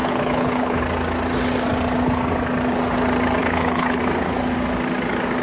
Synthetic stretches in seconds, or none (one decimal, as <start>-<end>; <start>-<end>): 0.0-0.8; 3.4-4.0